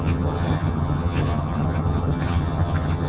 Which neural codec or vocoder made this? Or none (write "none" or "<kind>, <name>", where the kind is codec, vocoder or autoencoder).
vocoder, HiFi-GAN